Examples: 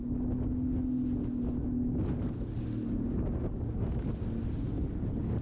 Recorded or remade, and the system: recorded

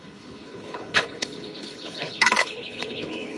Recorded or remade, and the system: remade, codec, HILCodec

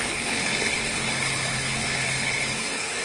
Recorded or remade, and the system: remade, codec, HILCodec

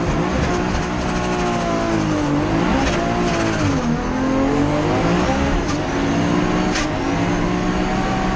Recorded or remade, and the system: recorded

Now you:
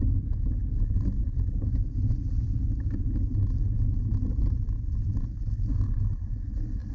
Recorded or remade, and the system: recorded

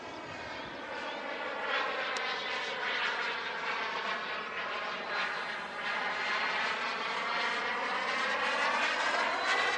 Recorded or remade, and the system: recorded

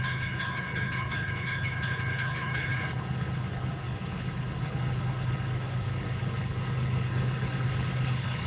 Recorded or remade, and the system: remade, codec, HILCodec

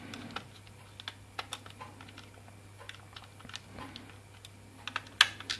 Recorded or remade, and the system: recorded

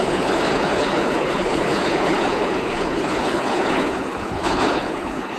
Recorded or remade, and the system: remade, codec, HILCodec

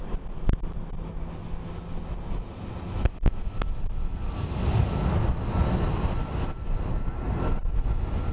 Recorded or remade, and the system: recorded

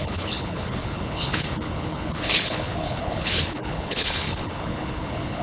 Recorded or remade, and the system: remade, codec, HILCodec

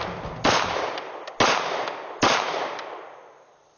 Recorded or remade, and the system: recorded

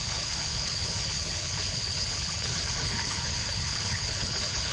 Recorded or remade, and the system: remade, codec, HILCodec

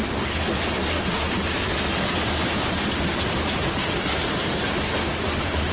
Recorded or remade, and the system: recorded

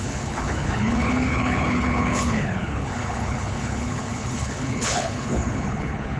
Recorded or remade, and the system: remade, codec, HILCodec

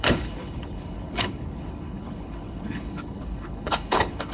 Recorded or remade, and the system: remade, codec, HILCodec